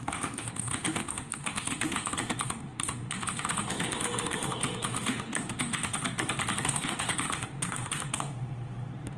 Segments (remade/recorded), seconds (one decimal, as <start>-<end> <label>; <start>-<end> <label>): 0.0-6.0 remade; 6.0-6.6 recorded; 6.6-9.2 remade